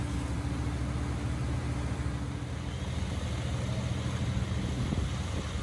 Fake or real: real